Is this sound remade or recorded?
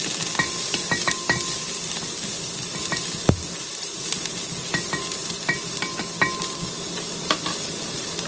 recorded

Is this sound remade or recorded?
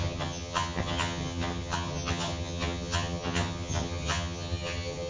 remade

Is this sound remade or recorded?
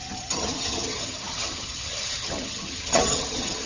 remade